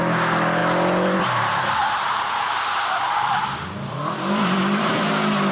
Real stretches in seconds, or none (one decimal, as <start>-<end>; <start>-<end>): 0.0-0.6; 1.2-1.8; 5.1-5.5